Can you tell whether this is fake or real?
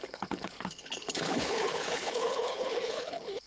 fake